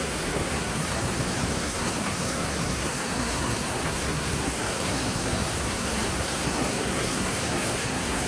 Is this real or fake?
fake